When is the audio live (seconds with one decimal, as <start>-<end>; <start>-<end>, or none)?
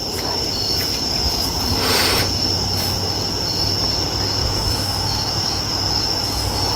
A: 0.0-4.4; 5.6-6.8